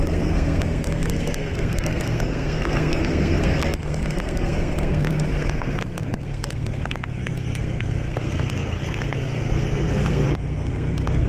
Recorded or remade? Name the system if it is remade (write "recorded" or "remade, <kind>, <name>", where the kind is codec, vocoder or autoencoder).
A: remade, codec, SNAC